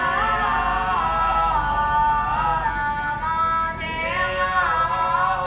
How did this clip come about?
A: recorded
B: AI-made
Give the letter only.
A